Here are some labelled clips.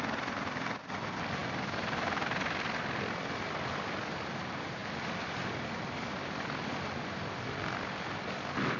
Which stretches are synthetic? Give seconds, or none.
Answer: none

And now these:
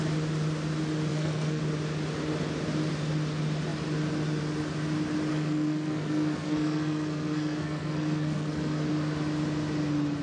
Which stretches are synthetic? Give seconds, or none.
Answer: 1.1-1.6 (codec, SNAC); 5.3-8.9

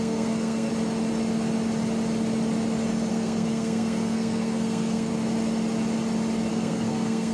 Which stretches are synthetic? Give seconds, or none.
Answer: 0.0-0.7 (codec, SNAC); 3.1-5.1; 6.5-7.3

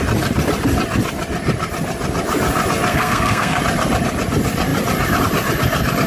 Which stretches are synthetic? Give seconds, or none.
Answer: 2.9-3.6 (codec, SNAC)

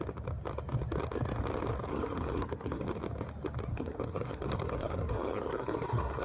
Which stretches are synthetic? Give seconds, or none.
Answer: 1.9-2.8 (codec, SNAC); 3.7-6.2

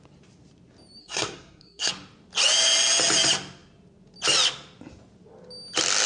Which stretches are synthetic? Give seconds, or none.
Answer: 1.0-1.9 (codec, SNAC)